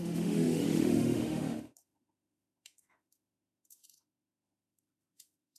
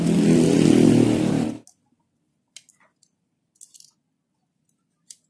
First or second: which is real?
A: second